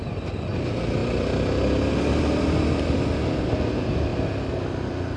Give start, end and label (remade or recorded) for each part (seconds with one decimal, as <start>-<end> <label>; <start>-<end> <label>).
0.0-5.2 recorded